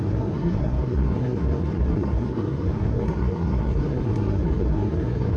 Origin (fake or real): fake